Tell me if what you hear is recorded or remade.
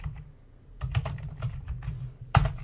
recorded